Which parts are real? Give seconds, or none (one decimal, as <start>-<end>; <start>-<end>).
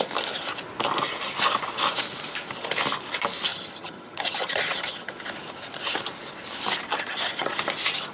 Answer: 0.0-3.5; 5.1-6.9; 7.5-8.1